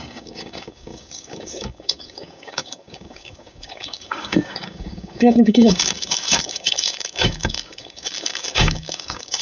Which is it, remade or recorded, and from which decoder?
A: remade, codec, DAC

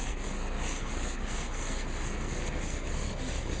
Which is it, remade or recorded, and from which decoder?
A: remade, codec, SNAC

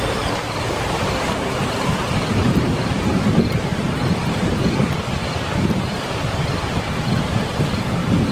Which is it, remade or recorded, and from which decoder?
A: remade, vocoder, BigVGAN v2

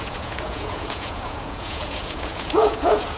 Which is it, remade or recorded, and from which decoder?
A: remade, vocoder, Vocos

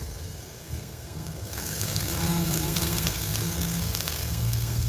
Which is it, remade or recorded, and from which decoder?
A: remade, codec, SNAC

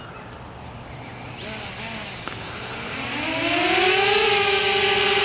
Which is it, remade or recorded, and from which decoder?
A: recorded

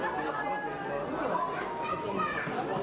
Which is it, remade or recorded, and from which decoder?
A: recorded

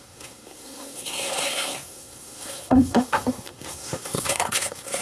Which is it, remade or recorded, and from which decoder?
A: remade, codec, SNAC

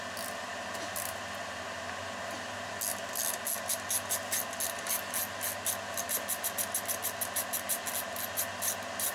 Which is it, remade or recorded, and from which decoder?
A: recorded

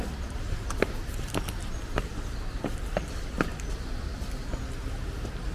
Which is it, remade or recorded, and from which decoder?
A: recorded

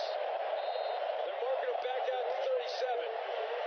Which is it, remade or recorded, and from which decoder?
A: remade, vocoder, BigVGAN v2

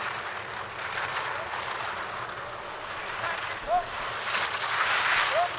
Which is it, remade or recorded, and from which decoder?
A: recorded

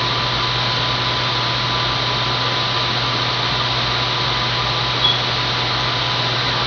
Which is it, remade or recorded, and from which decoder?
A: recorded